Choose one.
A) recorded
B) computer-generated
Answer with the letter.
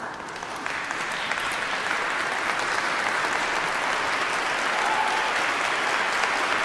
A